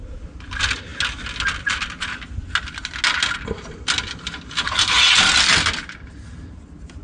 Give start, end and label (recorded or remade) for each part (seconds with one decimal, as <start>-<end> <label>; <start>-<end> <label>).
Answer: 0.0-7.0 recorded